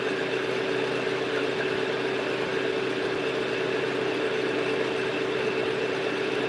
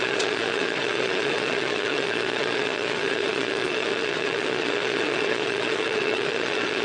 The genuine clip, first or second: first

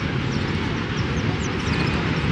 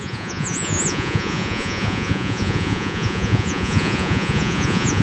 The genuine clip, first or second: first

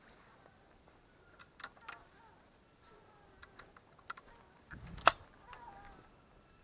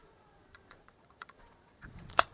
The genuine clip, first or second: first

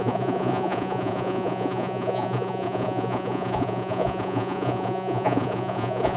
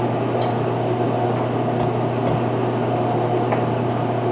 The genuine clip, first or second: second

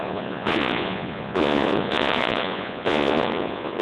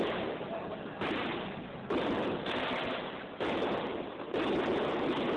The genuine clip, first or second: second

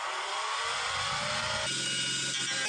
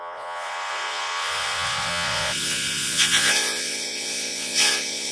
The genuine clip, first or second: first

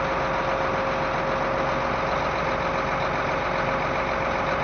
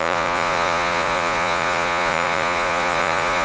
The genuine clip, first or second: first